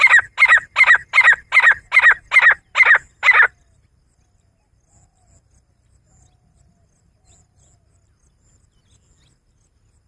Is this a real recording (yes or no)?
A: yes